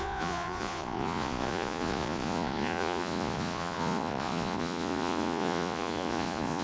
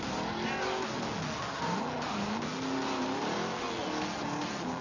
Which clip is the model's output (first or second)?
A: first